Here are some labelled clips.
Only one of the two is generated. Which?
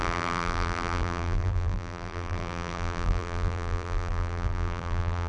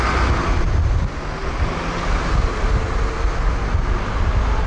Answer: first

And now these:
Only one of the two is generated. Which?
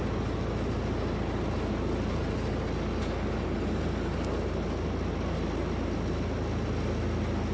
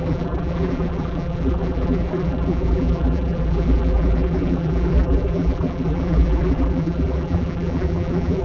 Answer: second